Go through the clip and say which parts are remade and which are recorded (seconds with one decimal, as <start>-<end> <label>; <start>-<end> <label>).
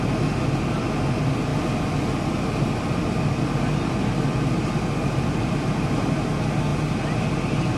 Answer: 0.0-1.5 recorded; 1.5-6.2 remade; 6.2-7.8 recorded